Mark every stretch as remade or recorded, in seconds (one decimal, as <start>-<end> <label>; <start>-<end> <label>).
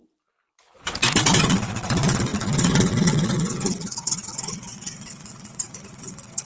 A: 0.0-1.4 recorded; 1.4-6.4 remade